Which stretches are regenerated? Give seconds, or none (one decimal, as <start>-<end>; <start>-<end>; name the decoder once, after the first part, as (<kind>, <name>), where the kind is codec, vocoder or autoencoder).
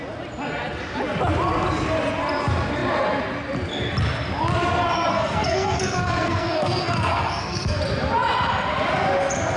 5.1-7.8 (codec, SNAC)